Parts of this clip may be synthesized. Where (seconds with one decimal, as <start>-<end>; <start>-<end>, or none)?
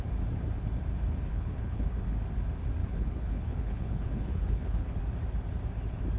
1.3-1.9; 2.8-5.0